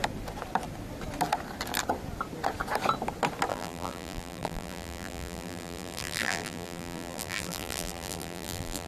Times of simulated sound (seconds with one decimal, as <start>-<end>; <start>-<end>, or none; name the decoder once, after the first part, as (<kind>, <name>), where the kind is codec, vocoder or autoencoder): 3.5-8.9 (vocoder, BigVGAN v2)

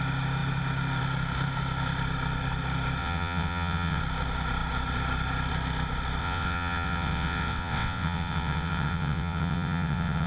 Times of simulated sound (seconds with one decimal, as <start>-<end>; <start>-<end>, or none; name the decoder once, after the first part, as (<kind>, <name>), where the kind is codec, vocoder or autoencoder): 3.0-4.0 (vocoder, WaveNeXt); 6.2-10.3

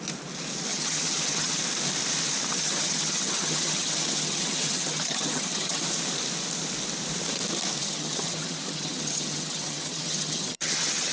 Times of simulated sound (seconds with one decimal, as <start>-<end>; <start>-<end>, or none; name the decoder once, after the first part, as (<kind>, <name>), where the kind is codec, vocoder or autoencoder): 0.7-1.6 (vocoder, HiFi-GAN); 2.5-5.8; 7.8-11.1

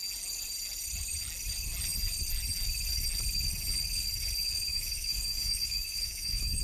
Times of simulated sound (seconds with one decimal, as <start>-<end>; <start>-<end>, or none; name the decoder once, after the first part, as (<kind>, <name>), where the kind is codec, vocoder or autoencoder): 4.7-6.6 (autoencoder, DAC-VAE)

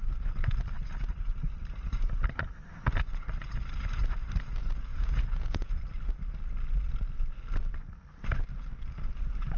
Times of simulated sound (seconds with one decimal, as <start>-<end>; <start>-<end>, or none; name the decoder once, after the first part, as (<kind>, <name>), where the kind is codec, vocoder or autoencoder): 4.9-5.8 (vocoder, Vocos)